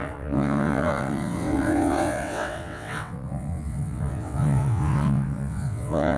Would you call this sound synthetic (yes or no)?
yes